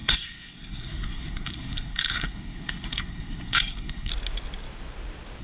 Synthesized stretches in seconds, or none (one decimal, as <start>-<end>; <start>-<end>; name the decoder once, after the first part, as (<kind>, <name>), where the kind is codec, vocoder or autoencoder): 0.0-4.1 (codec, SNAC)

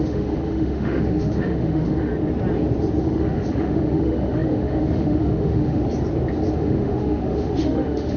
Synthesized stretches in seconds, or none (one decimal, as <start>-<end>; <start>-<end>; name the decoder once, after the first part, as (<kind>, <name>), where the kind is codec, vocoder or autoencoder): 0.0-2.1 (autoencoder, DAC-VAE); 3.0-5.8; 6.5-8.2

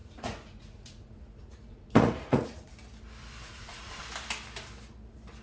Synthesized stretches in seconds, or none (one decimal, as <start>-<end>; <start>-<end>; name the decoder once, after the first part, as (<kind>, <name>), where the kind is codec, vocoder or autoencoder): 0.0-2.7 (vocoder, Vocos); 3.4-4.0